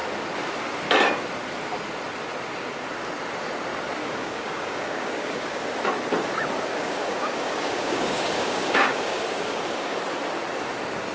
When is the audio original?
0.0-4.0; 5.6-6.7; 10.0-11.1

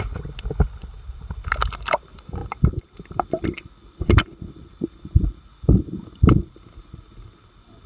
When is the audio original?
0.0-7.9